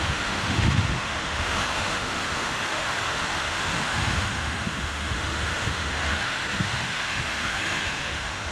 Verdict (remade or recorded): remade